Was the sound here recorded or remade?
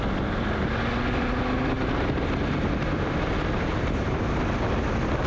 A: recorded